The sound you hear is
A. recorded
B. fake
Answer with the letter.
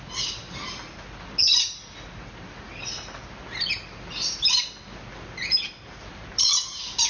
A